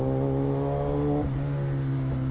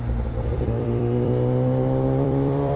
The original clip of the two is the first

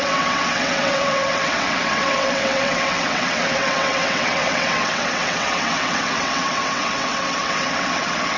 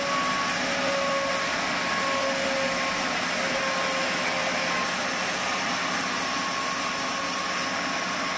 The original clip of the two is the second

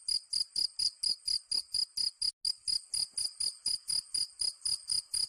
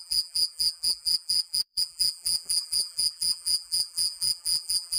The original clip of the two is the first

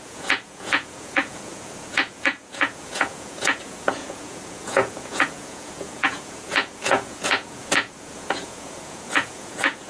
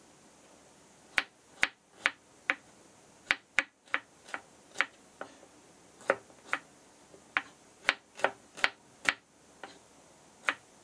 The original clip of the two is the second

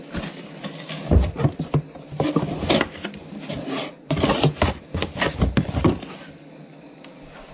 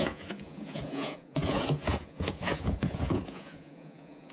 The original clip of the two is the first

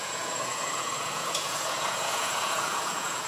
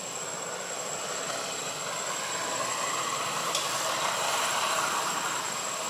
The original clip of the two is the second